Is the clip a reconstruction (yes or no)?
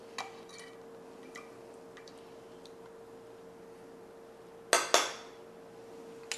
no